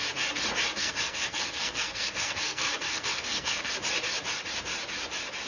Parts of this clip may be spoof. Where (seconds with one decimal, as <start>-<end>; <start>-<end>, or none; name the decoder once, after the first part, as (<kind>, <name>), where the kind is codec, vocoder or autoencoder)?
0.8-3.7 (codec, SNAC)